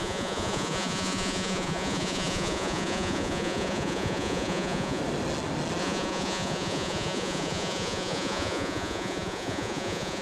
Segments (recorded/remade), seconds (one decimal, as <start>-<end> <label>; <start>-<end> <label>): 0.0-5.0 remade; 5.0-5.8 recorded; 5.8-10.2 remade